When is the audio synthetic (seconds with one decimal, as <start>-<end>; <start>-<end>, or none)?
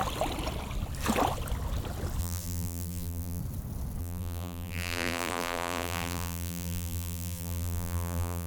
2.2-3.4; 4.0-8.5